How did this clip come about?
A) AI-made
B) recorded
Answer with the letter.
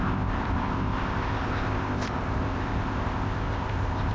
A